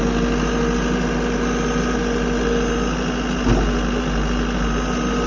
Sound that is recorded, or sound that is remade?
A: recorded